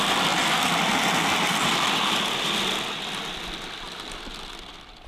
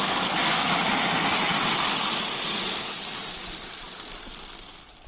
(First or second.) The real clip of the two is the first